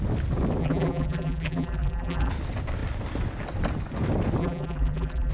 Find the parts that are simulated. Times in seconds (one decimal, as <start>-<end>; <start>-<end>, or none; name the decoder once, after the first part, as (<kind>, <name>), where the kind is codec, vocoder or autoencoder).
0.6-2.3 (vocoder, BigVGAN v2); 4.4-5.3